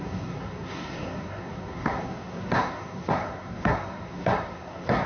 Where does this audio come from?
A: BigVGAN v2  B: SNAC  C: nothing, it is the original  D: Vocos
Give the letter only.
B